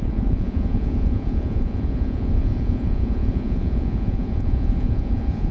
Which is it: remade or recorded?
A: remade